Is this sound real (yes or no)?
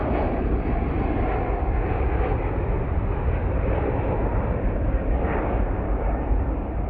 yes